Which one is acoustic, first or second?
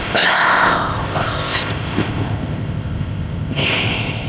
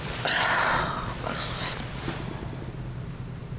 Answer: second